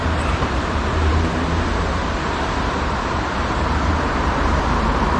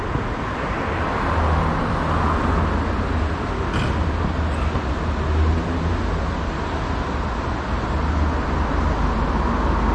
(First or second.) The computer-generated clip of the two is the first